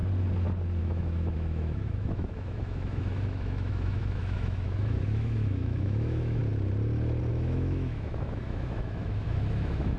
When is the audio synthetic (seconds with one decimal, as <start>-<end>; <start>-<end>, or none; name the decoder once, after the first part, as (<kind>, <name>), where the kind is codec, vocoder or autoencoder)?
0.8-6.4 (autoencoder, DAC-VAE); 7.3-10.0